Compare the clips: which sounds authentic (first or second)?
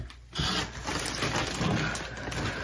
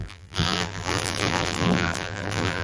first